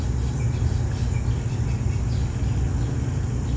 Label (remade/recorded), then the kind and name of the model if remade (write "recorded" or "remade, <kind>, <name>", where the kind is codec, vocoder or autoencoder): recorded